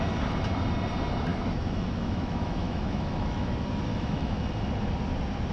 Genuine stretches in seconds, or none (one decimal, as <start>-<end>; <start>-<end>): 0.0-1.3; 3.5-3.9; 4.5-5.5